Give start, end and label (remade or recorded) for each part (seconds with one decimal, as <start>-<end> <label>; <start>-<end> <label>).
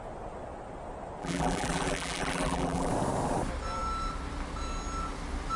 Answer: 0.0-1.2 recorded; 1.2-2.9 remade; 2.9-5.6 recorded